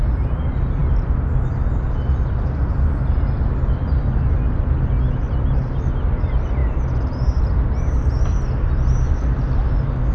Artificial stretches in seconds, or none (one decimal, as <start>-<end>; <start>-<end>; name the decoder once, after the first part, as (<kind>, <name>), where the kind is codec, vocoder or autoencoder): none